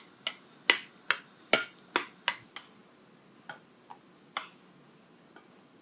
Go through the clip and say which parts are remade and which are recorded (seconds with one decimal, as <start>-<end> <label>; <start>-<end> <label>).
0.0-5.8 recorded